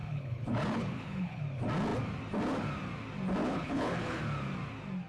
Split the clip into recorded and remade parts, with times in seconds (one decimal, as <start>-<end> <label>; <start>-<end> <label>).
0.0-1.4 remade; 1.4-3.4 recorded; 3.4-4.2 remade; 4.2-5.1 recorded